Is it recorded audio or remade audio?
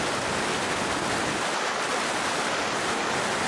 recorded